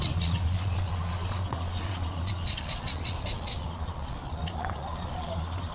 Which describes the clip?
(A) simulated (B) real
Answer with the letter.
A